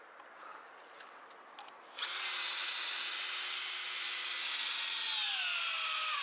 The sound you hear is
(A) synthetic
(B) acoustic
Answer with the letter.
B